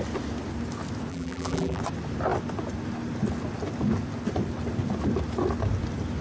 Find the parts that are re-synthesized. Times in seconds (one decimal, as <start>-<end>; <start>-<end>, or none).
1.1-1.8